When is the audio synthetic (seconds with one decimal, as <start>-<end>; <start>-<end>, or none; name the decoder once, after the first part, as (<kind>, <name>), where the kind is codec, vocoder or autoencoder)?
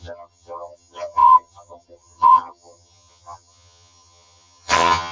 0.0-5.1 (vocoder, HiFi-GAN)